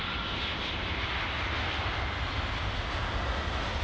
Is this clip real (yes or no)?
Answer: yes